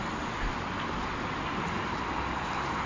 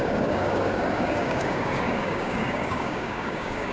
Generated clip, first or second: second